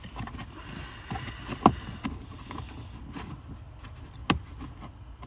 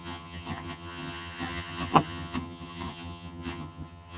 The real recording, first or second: first